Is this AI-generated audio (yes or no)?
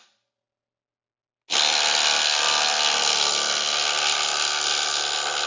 no